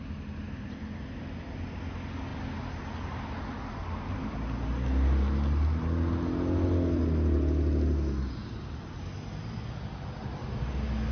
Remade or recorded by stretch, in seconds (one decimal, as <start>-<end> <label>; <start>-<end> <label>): 0.0-11.1 recorded